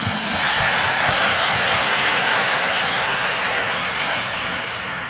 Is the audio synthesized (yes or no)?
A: yes